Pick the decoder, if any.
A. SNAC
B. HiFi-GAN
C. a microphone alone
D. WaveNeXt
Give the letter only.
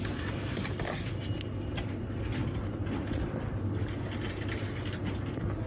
C